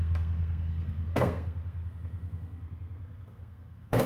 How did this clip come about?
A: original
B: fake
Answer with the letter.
B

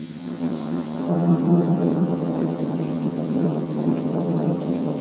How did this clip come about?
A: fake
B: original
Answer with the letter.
A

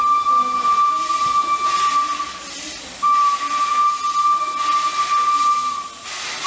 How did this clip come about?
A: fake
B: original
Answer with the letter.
B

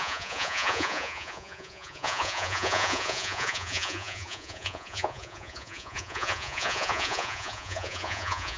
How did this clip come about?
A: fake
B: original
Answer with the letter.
A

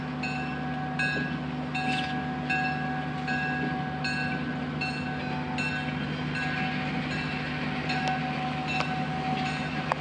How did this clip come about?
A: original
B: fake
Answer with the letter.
A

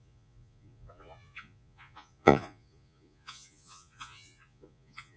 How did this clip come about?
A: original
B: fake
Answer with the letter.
B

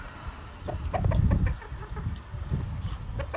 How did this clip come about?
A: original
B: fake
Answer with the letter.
A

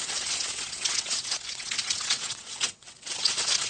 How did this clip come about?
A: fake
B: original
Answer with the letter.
A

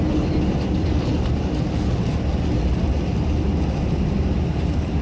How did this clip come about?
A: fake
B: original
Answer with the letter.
B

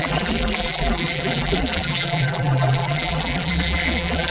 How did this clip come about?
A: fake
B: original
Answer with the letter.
A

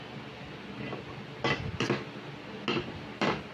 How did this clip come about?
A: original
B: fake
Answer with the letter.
A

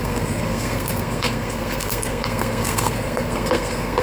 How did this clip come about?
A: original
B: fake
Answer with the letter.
B